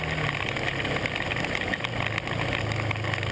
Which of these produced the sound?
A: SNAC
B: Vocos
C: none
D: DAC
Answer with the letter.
C